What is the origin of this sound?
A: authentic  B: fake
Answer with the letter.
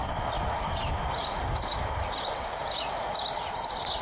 A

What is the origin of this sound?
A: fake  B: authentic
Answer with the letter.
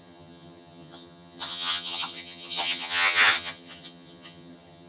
A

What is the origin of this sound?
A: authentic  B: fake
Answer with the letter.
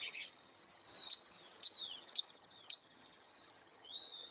B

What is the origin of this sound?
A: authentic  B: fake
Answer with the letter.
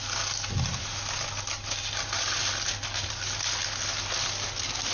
A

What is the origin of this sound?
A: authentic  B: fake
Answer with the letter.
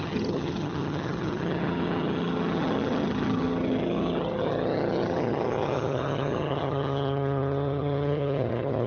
B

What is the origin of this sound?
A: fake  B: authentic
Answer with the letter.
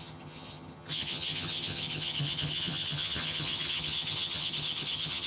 A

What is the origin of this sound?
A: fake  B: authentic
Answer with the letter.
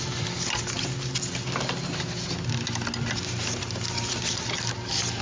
B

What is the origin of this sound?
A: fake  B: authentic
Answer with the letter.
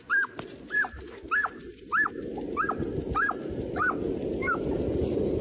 B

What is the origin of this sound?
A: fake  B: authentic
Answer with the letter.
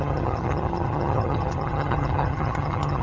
A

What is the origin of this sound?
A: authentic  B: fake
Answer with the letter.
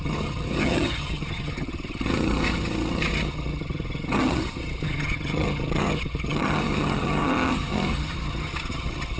B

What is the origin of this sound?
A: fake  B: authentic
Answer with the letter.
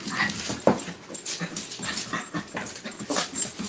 B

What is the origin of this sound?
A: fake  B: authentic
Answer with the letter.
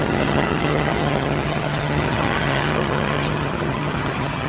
A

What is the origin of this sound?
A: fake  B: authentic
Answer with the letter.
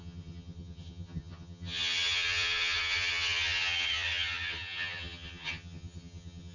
A